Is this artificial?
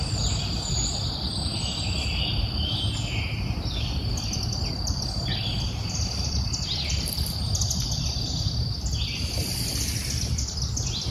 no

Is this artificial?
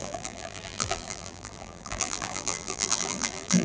yes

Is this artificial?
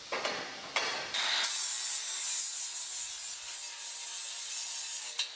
no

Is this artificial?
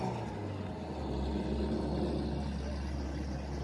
no